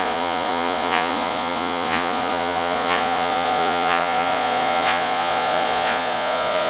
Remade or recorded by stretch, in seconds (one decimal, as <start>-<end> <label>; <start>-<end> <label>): 0.0-6.7 remade